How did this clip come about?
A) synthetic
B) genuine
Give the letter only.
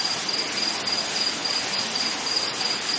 B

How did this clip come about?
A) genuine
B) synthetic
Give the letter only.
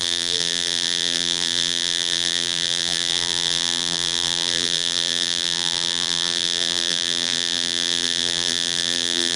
B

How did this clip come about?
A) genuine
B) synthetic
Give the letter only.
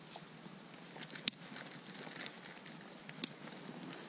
A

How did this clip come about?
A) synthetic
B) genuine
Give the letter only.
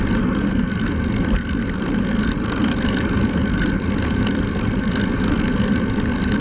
B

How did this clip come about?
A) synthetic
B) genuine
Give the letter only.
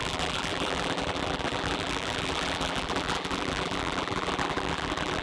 A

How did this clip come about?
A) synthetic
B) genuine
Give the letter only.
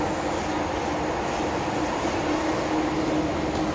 B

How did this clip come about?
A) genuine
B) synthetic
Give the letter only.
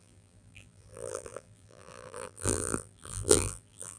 B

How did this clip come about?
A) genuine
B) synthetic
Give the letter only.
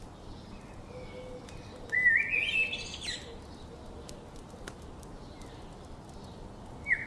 A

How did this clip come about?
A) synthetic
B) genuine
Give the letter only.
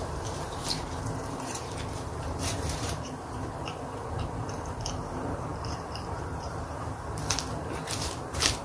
A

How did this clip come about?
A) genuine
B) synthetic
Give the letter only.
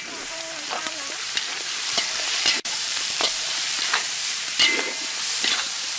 B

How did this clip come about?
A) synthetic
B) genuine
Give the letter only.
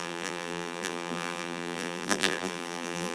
A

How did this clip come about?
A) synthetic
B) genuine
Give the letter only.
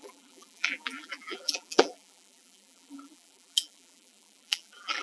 A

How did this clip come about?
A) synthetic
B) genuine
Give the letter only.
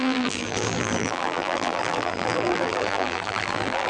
A